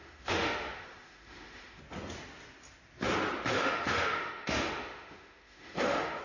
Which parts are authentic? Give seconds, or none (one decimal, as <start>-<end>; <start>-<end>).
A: 1.8-3.5